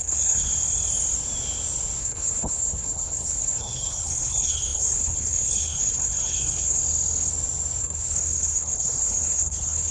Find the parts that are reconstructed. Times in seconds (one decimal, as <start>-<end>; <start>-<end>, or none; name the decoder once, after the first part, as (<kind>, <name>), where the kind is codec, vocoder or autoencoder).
0.0-0.5 (codec, HILCodec); 2.0-6.8; 7.8-9.9